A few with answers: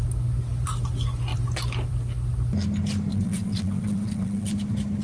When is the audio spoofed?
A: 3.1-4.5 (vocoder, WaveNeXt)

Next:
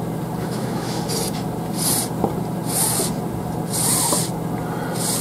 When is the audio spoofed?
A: 0.4-1.0 (autoencoder, DAC-VAE)

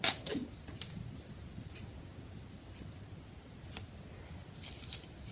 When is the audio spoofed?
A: none

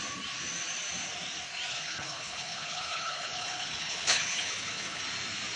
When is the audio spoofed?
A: 1.7-5.0 (codec, HILCodec)

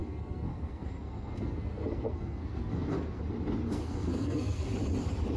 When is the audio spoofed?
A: 0.0-3.2 (codec, SNAC); 3.7-4.7

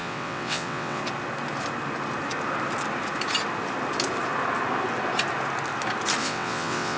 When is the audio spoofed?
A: 0.0-1.0 (vocoder, WaveNeXt); 6.2-7.0